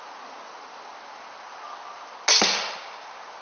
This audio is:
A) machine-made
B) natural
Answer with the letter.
B